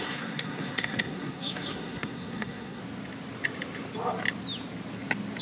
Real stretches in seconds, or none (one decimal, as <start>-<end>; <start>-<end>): 2.8-5.4